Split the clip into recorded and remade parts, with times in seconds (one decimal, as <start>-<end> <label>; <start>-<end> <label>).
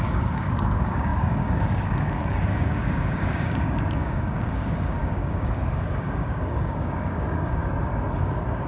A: 0.0-7.6 remade; 7.6-8.2 recorded; 8.2-8.7 remade